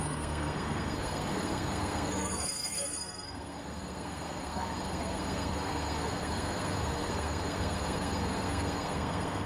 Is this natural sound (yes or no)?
no